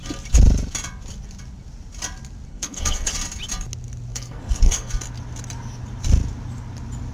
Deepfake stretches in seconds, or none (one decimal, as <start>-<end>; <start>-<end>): 2.5-3.1; 4.1-4.9